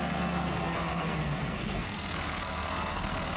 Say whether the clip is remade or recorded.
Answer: remade